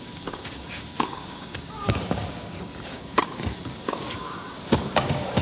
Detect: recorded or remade remade